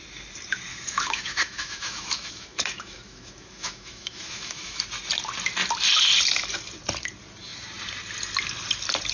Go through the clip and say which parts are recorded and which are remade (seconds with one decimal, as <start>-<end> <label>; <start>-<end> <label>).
0.0-0.7 recorded; 0.7-4.8 remade; 4.8-9.1 recorded